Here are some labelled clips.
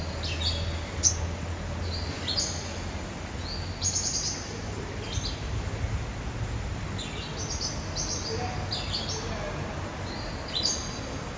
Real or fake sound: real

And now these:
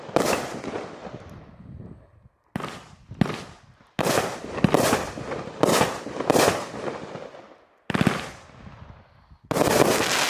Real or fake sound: real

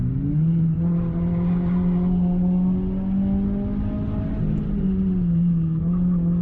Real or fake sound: real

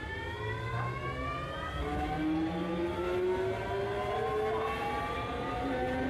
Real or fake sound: real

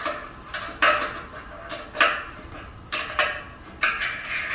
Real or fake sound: real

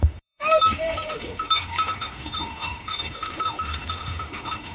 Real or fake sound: fake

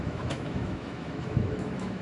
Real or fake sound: fake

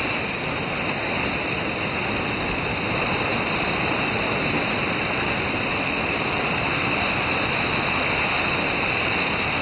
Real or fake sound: real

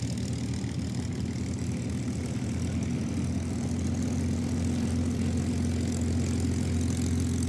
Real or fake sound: real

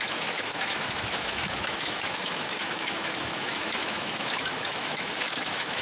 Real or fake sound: fake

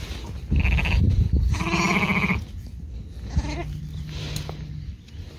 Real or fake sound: real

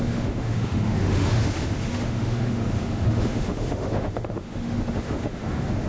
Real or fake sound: fake